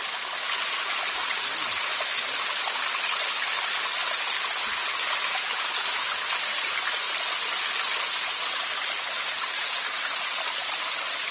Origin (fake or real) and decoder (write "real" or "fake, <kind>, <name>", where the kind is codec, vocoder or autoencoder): real